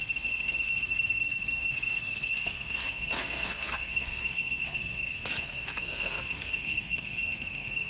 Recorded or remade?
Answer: remade